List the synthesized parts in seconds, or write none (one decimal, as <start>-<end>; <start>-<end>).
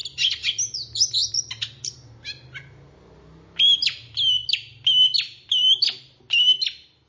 none